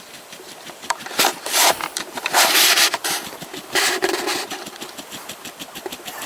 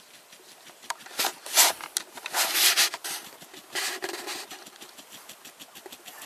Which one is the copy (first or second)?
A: first